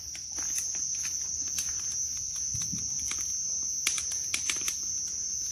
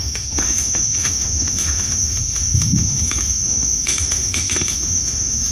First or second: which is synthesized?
second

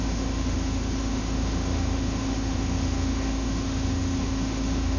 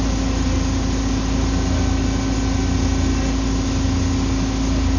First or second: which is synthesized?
first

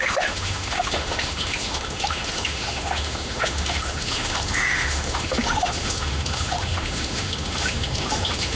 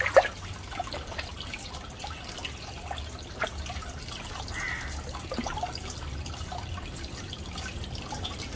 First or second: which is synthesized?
first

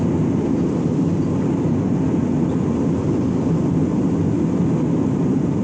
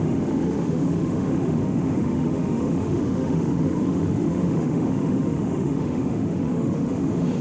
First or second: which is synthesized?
second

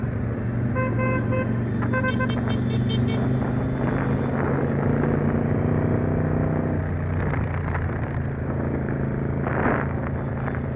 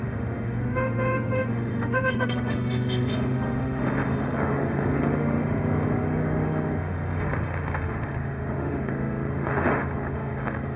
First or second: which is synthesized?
second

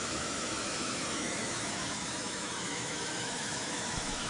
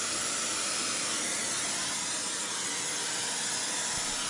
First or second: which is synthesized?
first